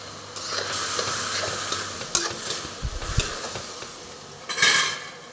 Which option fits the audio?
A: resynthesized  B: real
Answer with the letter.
B